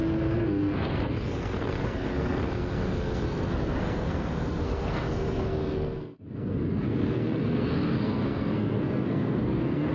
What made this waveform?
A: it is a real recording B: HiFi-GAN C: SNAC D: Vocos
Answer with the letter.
C